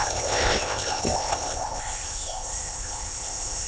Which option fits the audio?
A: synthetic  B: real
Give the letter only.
A